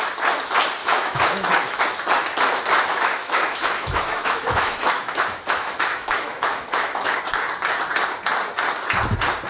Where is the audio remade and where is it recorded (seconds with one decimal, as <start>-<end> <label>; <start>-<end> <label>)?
0.0-0.8 recorded; 0.8-1.8 remade; 1.8-2.9 recorded; 2.9-7.2 remade; 7.2-9.5 recorded